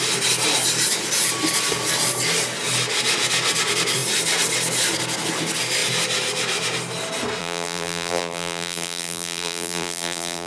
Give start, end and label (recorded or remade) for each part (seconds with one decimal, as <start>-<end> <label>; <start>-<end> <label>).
0.0-7.4 recorded; 7.4-10.5 remade